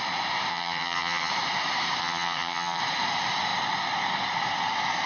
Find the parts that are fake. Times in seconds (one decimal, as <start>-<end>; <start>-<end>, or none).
0.5-1.3; 2.0-2.8

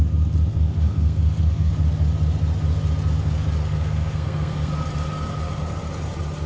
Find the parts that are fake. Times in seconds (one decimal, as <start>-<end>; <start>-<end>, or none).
0.5-1.7; 3.6-4.7

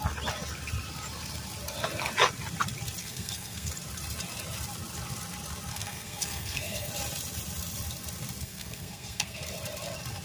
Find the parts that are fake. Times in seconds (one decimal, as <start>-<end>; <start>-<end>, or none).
3.0-3.7; 5.7-6.9; 8.4-9.4

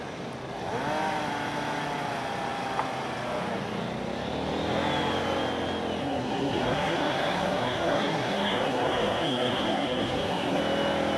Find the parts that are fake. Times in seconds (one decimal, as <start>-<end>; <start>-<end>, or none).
6.0-10.6